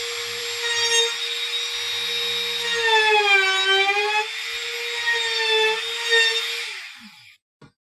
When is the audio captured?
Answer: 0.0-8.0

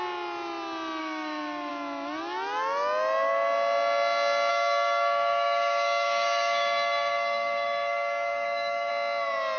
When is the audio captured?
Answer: 0.0-1.0; 1.7-4.5; 8.9-9.6

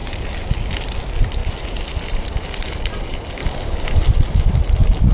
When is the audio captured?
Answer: 0.0-3.4; 4.1-5.1